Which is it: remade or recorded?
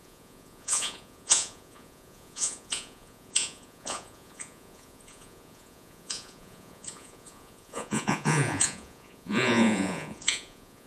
remade